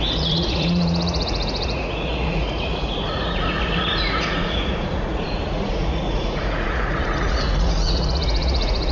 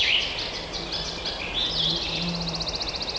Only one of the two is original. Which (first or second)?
second